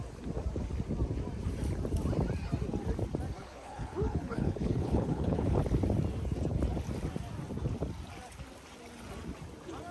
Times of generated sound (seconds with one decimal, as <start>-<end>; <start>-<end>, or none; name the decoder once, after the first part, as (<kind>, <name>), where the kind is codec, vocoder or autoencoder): 3.4-5.6 (codec, HILCodec)